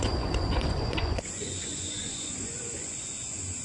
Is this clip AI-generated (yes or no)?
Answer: yes